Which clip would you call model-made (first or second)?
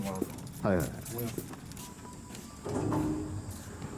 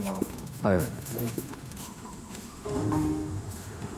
second